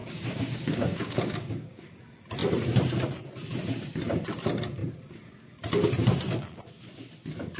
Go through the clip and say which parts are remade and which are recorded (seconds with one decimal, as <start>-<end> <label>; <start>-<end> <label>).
0.0-1.9 remade; 1.9-7.6 recorded